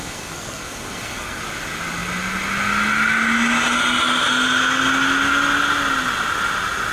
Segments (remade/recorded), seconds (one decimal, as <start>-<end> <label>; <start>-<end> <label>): 0.0-1.4 remade; 1.4-6.9 recorded